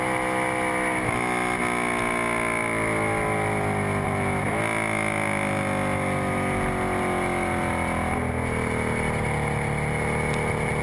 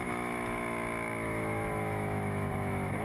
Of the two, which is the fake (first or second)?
second